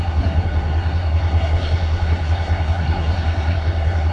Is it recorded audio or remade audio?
remade